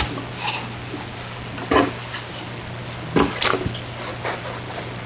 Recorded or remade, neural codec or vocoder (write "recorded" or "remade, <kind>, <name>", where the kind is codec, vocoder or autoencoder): recorded